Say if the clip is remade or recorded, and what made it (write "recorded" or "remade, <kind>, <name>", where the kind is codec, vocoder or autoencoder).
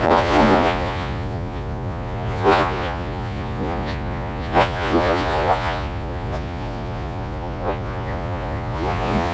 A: remade, vocoder, Vocos